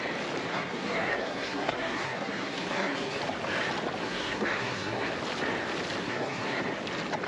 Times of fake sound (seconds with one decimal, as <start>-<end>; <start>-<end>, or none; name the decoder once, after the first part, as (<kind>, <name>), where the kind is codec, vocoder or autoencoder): 0.5-3.2 (codec, SNAC); 4.0-5.1; 6.0-6.6

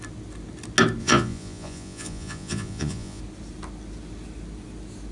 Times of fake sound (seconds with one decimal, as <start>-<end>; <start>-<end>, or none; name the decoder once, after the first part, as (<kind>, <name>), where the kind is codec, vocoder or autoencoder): 1.0-3.2 (vocoder, Vocos)

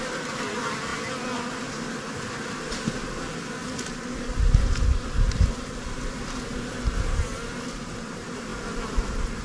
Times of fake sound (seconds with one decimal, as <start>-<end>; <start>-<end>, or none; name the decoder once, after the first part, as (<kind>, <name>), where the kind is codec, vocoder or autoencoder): none

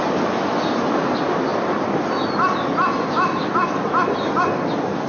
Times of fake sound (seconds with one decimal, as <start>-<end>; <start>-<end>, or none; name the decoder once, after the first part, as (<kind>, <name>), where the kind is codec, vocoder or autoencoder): none